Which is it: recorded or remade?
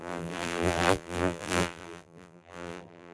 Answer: remade